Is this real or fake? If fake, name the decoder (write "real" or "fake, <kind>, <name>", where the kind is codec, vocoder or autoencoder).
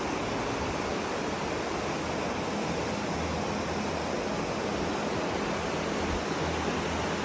real